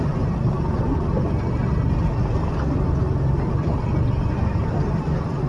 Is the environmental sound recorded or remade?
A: recorded